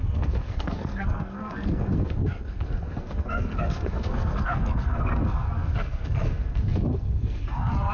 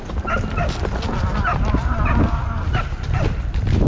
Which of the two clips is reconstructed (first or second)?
first